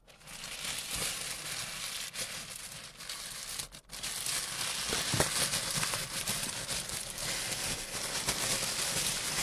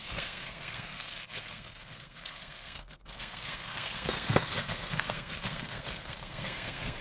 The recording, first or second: first